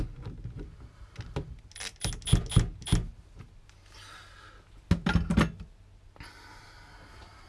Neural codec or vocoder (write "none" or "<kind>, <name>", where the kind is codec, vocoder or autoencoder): none